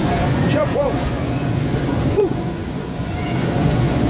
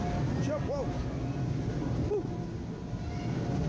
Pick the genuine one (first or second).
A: second